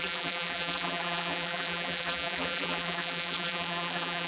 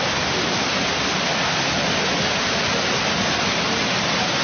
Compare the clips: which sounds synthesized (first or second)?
first